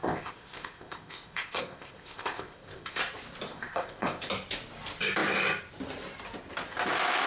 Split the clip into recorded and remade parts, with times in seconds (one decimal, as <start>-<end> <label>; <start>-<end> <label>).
0.0-3.0 remade; 3.0-3.5 recorded; 3.5-4.3 remade; 4.3-7.3 recorded